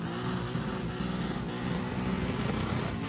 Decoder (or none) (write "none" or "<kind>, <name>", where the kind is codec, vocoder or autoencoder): none